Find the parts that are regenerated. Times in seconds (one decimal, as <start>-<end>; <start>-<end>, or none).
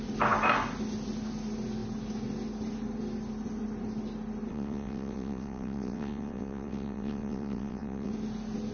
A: 4.5-8.1